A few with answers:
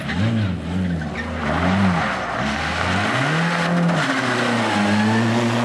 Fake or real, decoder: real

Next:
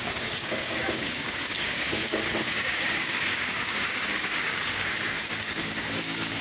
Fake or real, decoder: fake, codec, DAC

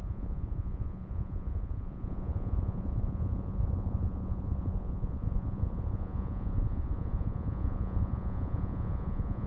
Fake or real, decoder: fake, vocoder, Vocos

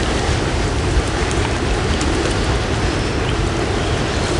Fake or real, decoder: real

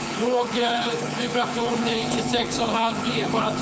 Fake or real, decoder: fake, codec, HILCodec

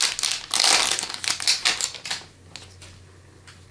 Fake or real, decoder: real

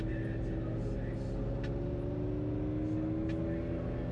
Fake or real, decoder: real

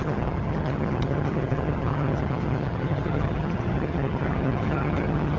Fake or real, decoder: fake, vocoder, HiFi-GAN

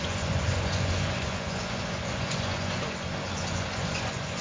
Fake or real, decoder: fake, vocoder, Vocos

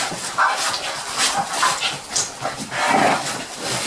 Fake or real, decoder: real